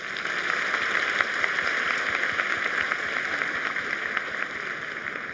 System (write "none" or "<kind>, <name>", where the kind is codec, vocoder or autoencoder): none